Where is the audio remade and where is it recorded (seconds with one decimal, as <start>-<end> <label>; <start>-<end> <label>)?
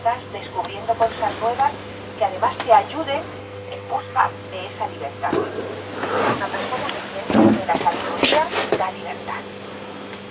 0.0-3.4 recorded; 3.4-4.3 remade; 4.3-10.3 recorded